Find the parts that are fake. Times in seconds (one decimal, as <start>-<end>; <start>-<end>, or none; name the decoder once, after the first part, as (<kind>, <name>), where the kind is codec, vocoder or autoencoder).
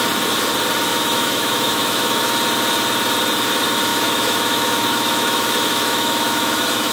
0.9-2.2 (autoencoder, DAC-VAE); 3.9-6.9